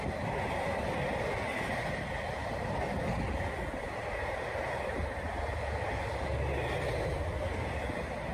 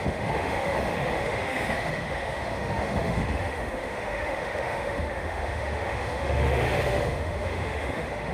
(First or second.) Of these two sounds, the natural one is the first